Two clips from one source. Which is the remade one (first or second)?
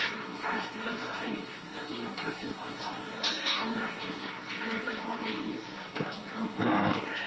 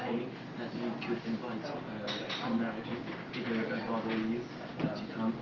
first